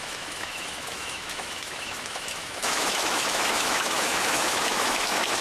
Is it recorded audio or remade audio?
remade